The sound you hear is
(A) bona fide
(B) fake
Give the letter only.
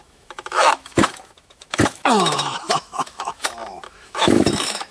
B